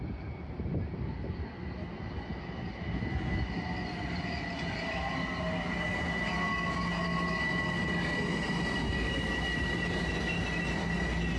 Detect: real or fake real